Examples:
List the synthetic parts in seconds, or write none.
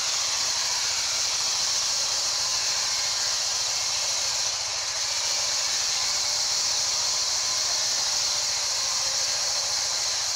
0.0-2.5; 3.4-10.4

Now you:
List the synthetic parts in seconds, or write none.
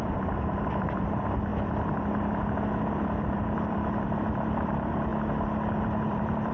0.0-1.5; 2.8-5.1; 5.8-6.5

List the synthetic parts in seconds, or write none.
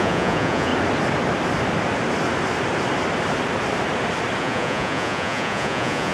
0.0-0.7; 4.4-6.1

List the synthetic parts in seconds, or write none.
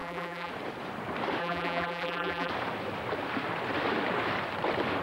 0.0-0.5; 1.4-2.5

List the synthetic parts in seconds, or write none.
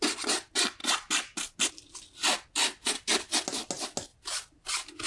4.1-4.6